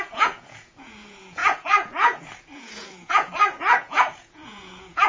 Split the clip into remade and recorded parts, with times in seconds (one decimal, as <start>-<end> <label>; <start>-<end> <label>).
0.0-5.1 remade